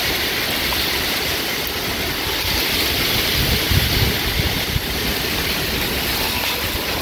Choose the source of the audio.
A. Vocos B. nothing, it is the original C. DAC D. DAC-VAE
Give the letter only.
B